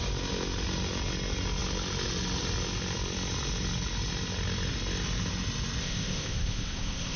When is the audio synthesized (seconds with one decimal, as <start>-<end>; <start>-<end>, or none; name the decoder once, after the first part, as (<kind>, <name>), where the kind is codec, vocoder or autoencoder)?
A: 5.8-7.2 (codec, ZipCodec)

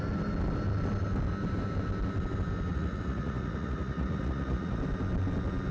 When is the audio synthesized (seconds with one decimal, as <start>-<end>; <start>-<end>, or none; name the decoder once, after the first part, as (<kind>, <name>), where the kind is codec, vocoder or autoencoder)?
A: 2.7-4.8 (vocoder, Vocos)

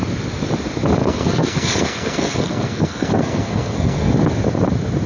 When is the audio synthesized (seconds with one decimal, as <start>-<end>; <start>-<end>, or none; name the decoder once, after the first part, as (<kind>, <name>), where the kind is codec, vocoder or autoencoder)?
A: 1.0-4.1 (codec, SNAC)

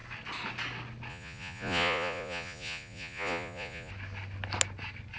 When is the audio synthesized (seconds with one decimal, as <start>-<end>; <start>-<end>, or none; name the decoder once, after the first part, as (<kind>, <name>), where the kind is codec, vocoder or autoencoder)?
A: 1.1-3.9 (vocoder, Vocos)

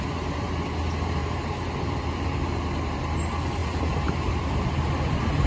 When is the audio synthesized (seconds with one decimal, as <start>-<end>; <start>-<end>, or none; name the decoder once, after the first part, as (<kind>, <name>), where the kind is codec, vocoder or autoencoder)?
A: 1.2-3.2 (vocoder, BigVGAN v2); 3.6-4.3